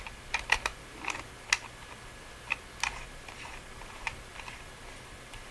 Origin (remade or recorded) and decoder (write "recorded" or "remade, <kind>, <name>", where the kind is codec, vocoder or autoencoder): recorded